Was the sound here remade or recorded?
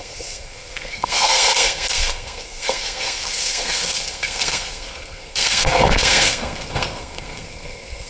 remade